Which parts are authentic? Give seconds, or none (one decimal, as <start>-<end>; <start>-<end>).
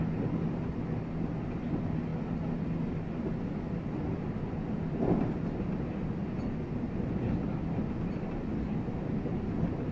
0.0-9.9